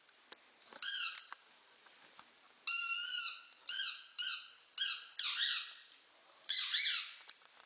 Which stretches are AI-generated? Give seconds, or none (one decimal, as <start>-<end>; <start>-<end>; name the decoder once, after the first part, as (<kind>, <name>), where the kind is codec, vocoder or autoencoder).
none